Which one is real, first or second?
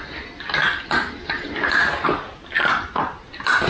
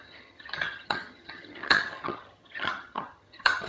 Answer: first